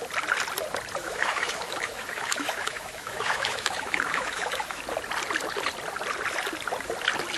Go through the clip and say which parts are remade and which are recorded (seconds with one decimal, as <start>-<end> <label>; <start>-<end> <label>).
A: 0.0-1.0 recorded; 1.0-4.8 remade; 4.8-7.4 recorded